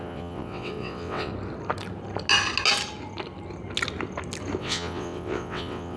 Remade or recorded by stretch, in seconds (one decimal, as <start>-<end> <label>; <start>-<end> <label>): 0.0-1.3 remade; 1.3-4.6 recorded; 4.6-6.0 remade